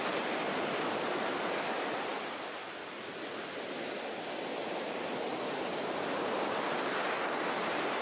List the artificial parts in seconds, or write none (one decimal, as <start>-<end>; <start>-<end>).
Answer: none